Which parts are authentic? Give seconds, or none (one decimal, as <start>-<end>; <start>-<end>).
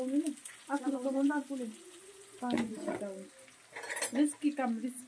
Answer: 0.0-0.4; 3.0-5.1